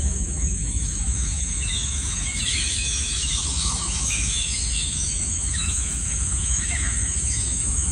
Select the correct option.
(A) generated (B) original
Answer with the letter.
A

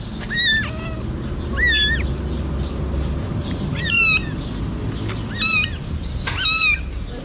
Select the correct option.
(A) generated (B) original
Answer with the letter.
B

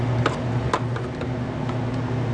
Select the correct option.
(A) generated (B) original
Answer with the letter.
B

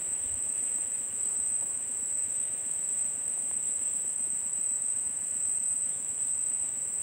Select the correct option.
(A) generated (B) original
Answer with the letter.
A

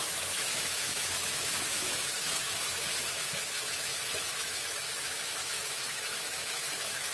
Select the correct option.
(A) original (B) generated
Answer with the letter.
B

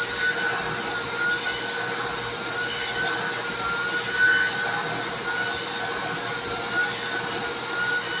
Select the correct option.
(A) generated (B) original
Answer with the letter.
B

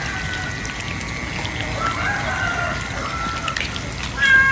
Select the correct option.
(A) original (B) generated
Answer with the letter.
A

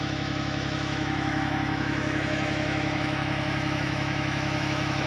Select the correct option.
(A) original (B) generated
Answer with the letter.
B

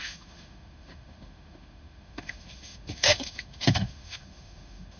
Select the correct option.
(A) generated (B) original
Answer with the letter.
A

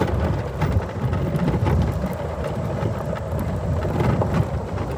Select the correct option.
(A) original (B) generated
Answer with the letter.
A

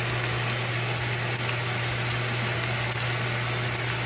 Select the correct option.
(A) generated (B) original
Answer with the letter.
B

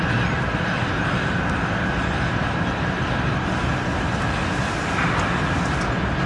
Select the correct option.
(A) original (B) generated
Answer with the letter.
A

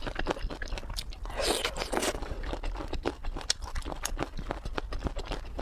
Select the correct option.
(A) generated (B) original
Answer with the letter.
B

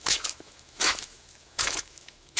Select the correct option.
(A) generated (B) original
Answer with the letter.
A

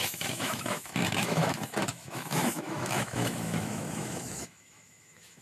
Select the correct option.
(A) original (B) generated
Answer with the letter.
B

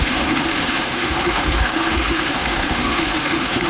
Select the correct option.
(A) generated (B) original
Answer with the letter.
A